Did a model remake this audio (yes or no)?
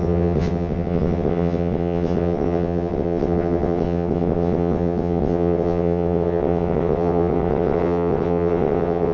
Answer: yes